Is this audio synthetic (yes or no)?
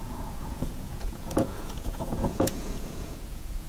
yes